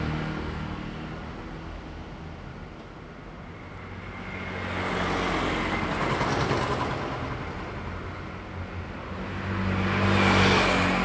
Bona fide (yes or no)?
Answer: yes